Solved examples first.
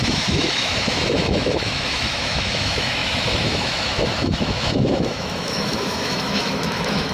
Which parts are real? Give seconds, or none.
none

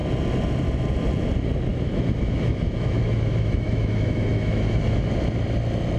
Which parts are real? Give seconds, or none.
0.0-1.7; 5.1-6.0

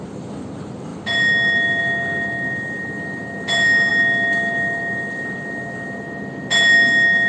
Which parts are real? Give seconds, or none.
0.0-7.3

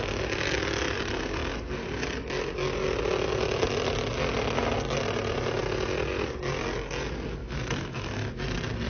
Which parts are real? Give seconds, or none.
0.0-7.4; 8.3-8.9